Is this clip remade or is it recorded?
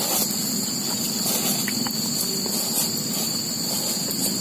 recorded